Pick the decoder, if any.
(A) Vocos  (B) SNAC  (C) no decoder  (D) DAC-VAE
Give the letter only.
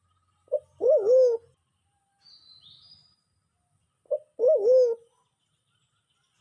C